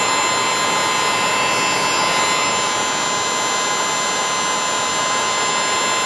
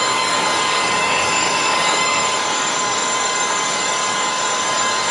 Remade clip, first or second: second